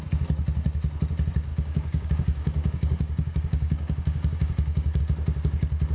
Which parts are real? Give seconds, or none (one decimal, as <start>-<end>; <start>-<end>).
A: 0.0-1.5; 5.0-5.9